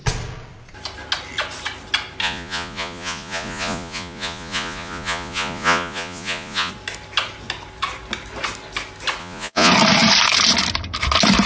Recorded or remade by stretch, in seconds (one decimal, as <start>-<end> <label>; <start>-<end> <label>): 0.0-2.2 recorded; 2.2-6.7 remade; 6.7-9.2 recorded; 9.2-9.7 remade; 9.7-11.5 recorded

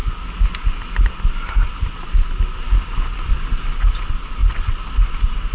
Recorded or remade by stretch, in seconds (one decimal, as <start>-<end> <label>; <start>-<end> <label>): 0.0-5.5 recorded

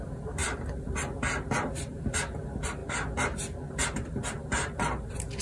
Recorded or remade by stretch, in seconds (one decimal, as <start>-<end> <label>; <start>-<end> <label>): 0.0-2.8 remade; 2.8-3.7 recorded; 3.7-5.4 remade

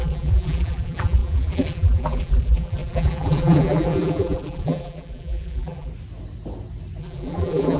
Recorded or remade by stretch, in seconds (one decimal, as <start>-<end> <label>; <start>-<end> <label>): 0.0-5.9 remade; 5.9-7.0 recorded; 7.0-7.8 remade